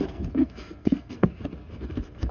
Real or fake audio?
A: fake